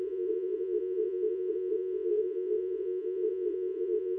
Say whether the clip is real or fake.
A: fake